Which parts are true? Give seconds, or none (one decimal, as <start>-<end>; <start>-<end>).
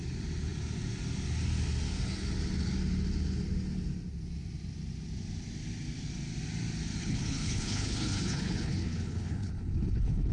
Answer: 0.0-7.0